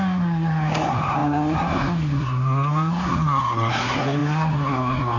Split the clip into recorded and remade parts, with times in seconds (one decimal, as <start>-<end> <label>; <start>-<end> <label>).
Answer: 0.0-5.2 remade